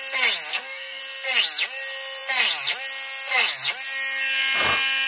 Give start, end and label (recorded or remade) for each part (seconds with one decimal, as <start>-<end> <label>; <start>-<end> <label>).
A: 0.0-0.5 recorded; 0.5-1.0 remade; 1.0-5.1 recorded

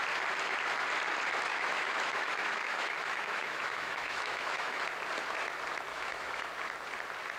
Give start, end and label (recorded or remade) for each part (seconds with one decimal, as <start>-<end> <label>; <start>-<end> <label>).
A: 0.0-1.5 recorded; 1.5-4.8 remade; 4.8-5.9 recorded; 5.9-6.5 remade; 6.5-7.4 recorded

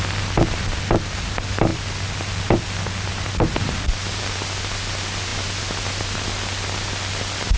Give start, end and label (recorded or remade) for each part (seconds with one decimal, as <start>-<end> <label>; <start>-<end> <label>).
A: 0.0-7.6 recorded

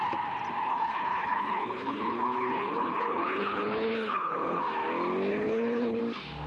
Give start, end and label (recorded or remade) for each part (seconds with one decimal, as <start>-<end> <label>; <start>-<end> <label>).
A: 0.0-0.7 recorded; 0.7-4.6 remade; 4.6-5.3 recorded; 5.3-6.0 remade; 6.0-6.5 recorded

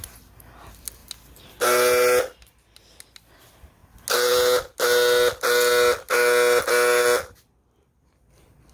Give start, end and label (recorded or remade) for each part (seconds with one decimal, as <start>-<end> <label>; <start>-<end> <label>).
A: 0.0-8.7 recorded